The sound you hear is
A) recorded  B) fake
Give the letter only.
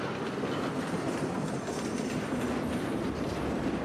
A